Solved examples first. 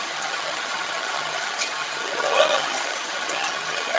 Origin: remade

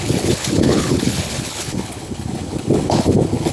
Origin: remade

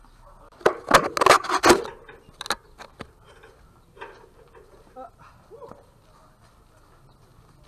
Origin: recorded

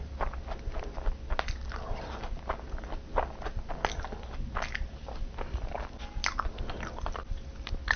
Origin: recorded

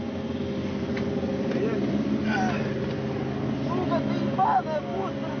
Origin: recorded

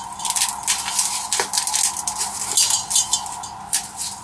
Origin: recorded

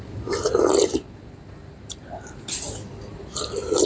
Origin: recorded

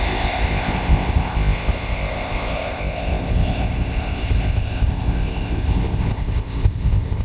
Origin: remade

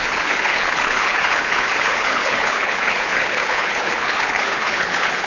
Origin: remade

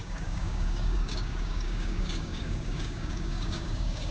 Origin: remade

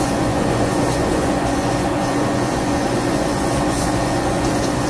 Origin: remade